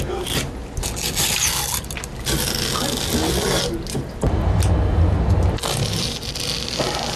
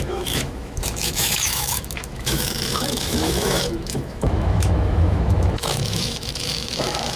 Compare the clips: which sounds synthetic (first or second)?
second